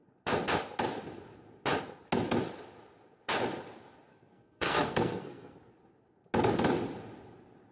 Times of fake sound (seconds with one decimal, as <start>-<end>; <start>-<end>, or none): 4.1-5.7